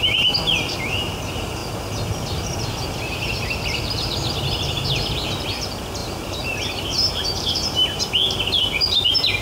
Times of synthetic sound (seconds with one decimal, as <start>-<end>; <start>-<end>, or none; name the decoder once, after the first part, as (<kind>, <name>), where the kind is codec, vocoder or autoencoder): 6.0-8.0 (vocoder, BigVGAN v2)

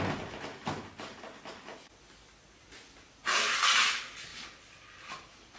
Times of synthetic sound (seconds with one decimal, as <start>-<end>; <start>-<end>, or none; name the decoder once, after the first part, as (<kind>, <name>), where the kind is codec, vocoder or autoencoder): 4.3-5.6 (vocoder, BigVGAN v2)